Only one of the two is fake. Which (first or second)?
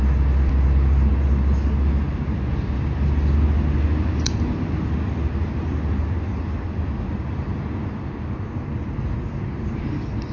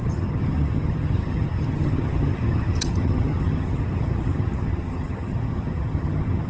second